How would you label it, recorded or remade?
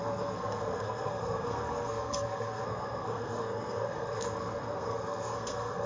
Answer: remade